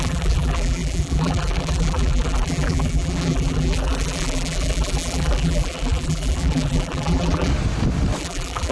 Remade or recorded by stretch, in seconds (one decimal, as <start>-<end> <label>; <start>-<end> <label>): 0.0-7.5 remade; 7.5-8.2 recorded; 8.2-8.7 remade

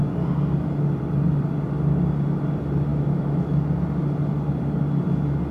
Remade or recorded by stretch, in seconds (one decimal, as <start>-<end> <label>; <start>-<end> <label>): 0.0-2.9 recorded; 2.9-3.8 remade; 3.8-5.5 recorded

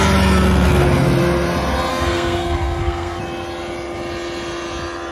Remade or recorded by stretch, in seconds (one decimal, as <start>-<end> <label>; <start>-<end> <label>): 0.0-1.9 recorded; 1.9-3.2 remade; 3.2-5.1 recorded